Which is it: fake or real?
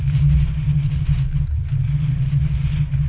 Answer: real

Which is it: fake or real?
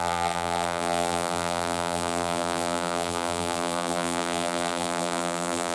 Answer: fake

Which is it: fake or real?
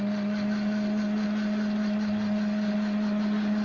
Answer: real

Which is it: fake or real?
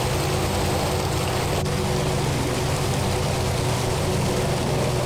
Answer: real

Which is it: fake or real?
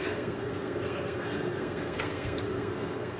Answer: fake